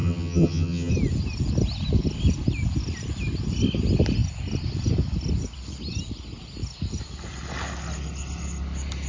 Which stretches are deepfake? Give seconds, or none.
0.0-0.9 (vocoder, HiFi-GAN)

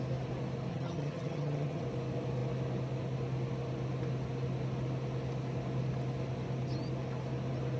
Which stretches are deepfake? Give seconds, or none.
0.7-1.8 (vocoder, HiFi-GAN)

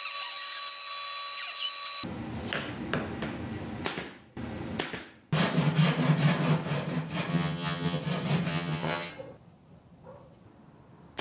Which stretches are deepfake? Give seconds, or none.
7.3-8.0 (vocoder, HiFi-GAN); 8.5-9.1

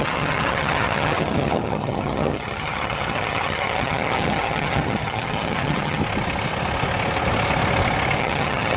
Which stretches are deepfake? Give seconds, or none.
0.0-6.0 (vocoder, HiFi-GAN); 8.2-8.8

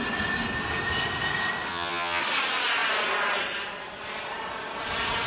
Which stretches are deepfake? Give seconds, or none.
1.7-2.2 (vocoder, HiFi-GAN)

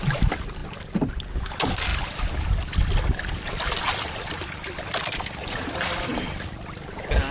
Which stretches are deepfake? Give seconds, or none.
none

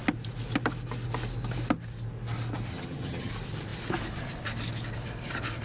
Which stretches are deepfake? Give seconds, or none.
2.7-3.3 (vocoder, HiFi-GAN)